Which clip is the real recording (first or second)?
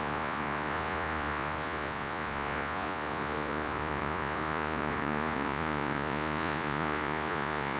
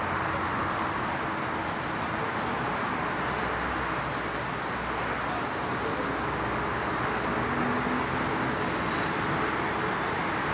second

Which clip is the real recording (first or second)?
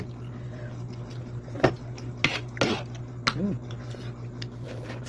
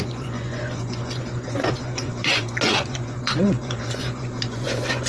first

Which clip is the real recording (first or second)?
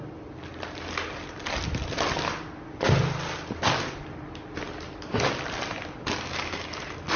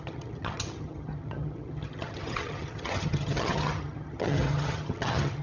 first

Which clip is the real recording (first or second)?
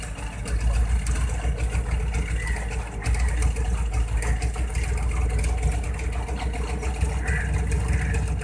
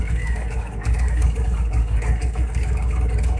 first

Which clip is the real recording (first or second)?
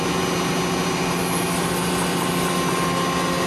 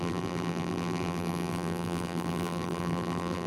first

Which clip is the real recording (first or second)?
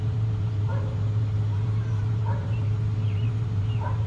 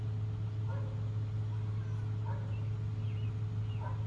second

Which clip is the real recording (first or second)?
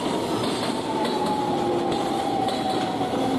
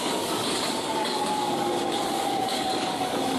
first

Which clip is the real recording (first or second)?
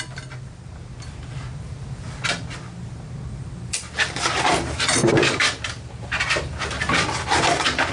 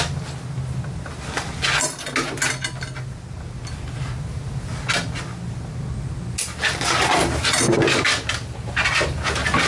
second